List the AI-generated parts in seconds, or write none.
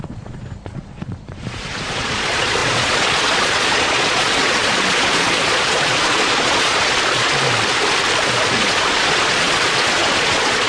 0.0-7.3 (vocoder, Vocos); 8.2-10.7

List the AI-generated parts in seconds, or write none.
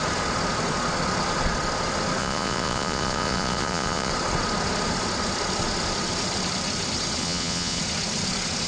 2.2-4.1 (vocoder, Vocos); 7.2-7.8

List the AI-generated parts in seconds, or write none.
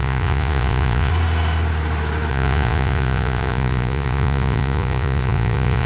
0.0-1.1 (vocoder, Vocos); 2.3-5.9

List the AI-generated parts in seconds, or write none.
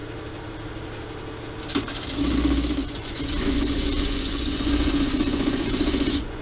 2.8-6.4 (vocoder, Vocos)